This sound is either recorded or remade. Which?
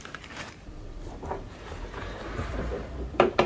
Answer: remade